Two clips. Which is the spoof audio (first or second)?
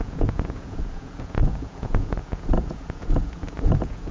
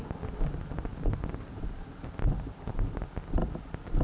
first